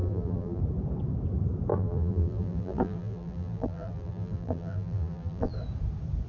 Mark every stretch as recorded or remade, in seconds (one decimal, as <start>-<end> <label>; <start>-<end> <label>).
0.0-0.6 remade; 0.6-1.7 recorded; 1.7-5.5 remade; 5.5-6.3 recorded